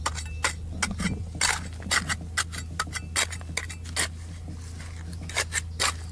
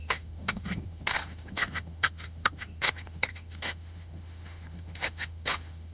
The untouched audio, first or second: first